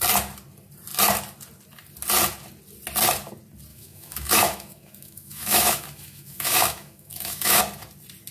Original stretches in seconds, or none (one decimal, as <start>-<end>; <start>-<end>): 0.0-3.7; 7.6-8.3